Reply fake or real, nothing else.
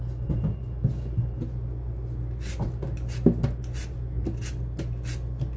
real